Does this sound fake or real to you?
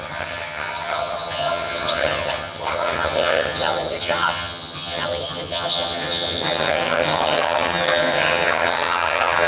fake